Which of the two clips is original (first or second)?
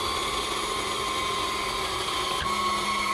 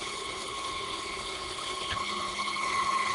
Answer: first